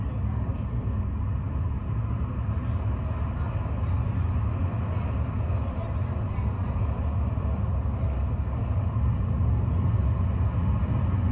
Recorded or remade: recorded